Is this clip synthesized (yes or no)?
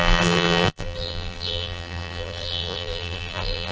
yes